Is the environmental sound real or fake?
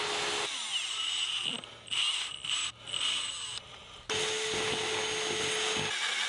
real